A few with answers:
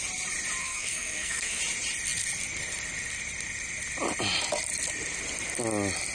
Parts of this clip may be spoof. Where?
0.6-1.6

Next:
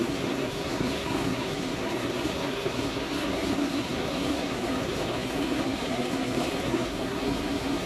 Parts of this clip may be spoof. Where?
0.0-7.9

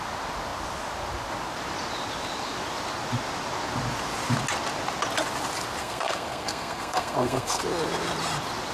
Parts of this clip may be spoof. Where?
5.8-7.6

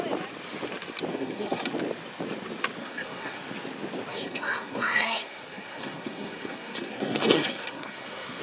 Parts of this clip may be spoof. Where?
1.1-1.7; 2.8-3.4; 4.1-8.4

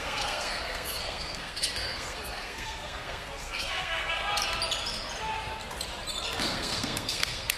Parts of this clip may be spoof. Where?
0.0-4.2; 6.4-7.6

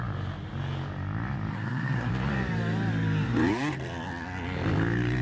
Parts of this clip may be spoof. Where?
1.5-2.1

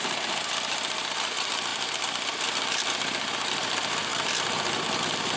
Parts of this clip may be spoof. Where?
none